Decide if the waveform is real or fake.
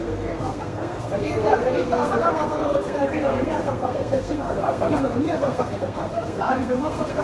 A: fake